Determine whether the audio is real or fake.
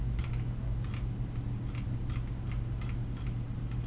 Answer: real